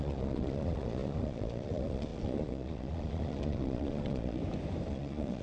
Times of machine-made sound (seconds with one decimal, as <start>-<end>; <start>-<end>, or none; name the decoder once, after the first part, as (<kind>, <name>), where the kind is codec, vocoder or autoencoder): 0.0-4.4 (vocoder, Vocos); 4.9-5.4